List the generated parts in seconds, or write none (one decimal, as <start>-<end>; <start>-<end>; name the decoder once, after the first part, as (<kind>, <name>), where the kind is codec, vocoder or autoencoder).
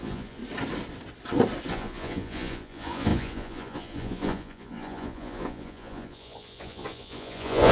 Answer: 0.0-0.4 (vocoder, Vocos); 1.7-7.7